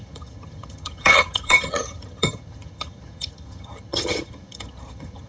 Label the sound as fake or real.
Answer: fake